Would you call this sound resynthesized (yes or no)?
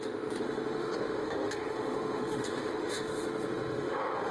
yes